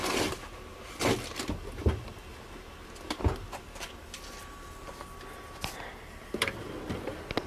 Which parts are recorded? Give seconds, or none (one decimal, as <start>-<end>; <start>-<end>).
0.0-7.5